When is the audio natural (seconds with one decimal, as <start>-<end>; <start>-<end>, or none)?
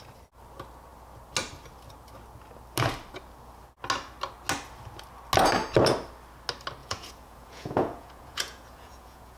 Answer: 0.0-6.8